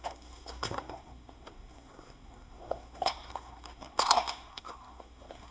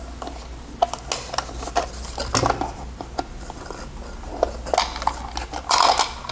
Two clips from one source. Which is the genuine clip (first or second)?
second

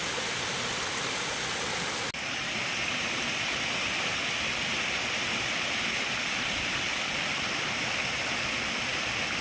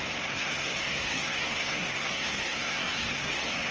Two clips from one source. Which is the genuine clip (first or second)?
first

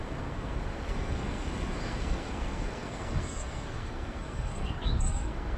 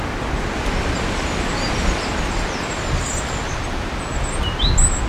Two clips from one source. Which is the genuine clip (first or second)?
second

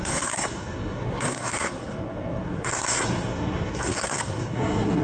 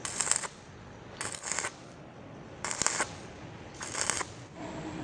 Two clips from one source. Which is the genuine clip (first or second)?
second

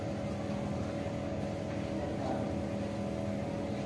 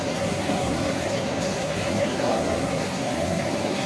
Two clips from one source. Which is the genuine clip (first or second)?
first